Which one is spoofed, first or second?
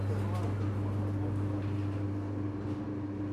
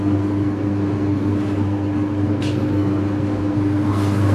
second